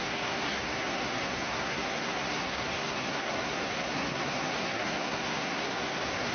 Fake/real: fake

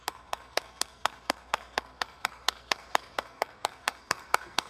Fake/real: fake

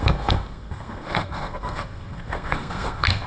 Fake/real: fake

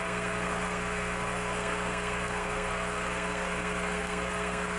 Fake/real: fake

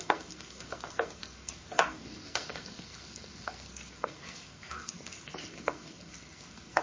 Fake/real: fake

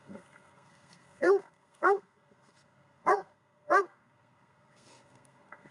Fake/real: fake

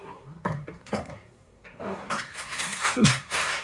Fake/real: fake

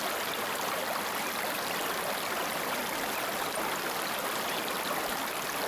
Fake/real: real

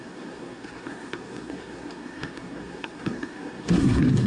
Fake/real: fake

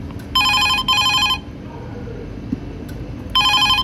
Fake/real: real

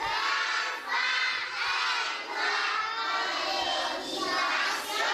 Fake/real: real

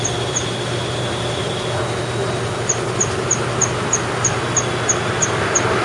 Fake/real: real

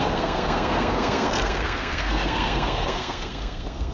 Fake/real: fake